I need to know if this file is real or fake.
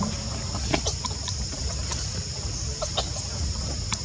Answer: fake